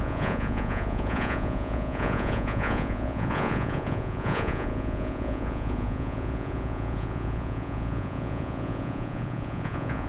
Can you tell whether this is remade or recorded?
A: remade